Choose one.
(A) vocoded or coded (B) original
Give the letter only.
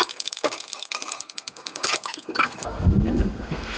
A